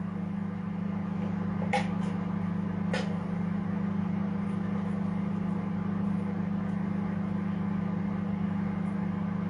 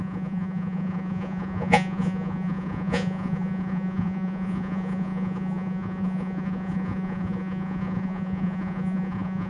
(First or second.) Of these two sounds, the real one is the first